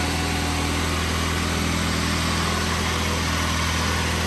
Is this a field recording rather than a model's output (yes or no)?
yes